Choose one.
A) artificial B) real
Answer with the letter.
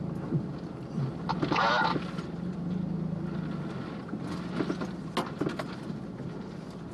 B